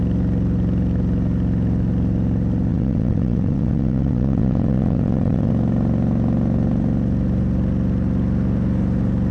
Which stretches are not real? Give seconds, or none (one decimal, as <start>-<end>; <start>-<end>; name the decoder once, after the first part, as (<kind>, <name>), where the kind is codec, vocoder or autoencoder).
2.7-5.5 (vocoder, WaveNeXt)